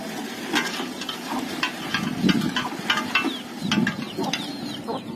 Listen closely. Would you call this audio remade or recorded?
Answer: recorded